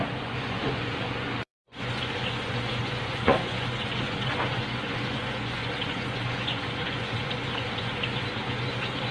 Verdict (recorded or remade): remade